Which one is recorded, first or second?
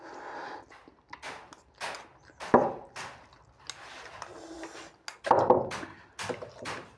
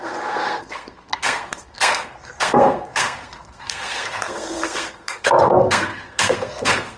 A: first